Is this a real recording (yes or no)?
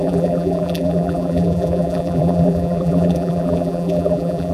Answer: no